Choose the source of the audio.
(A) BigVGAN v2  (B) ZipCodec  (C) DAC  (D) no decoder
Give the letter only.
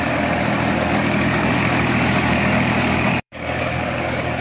C